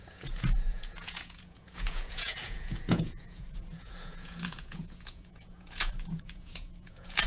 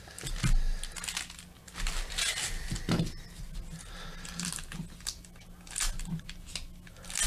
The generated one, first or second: first